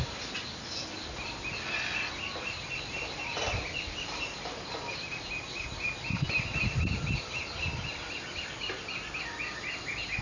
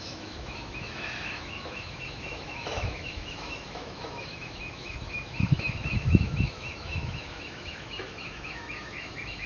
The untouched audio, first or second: first